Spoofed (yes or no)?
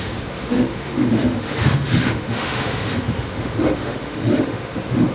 yes